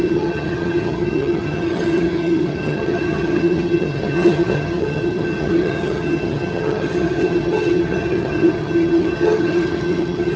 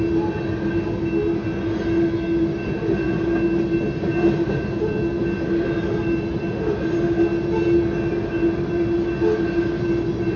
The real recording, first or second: second